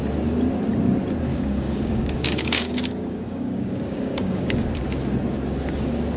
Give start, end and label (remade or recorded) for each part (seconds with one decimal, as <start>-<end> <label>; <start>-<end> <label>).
0.0-1.3 recorded; 1.3-4.8 remade; 4.8-6.2 recorded